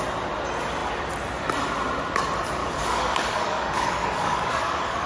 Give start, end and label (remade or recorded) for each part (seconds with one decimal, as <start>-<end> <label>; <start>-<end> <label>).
0.0-2.6 recorded; 2.6-5.1 remade